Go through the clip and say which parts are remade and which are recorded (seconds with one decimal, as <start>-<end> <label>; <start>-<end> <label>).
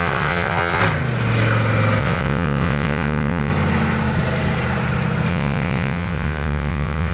0.0-0.8 remade; 0.8-2.0 recorded; 2.0-3.5 remade; 3.5-5.3 recorded; 5.3-7.1 remade